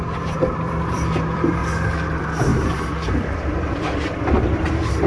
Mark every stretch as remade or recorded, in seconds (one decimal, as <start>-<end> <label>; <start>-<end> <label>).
0.0-1.6 remade; 1.6-2.1 recorded; 2.1-2.5 remade; 2.5-3.1 recorded; 3.1-5.1 remade